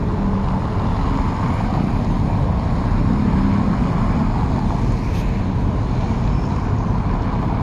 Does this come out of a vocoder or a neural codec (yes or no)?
no